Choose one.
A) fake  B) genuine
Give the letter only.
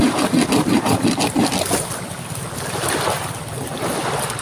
B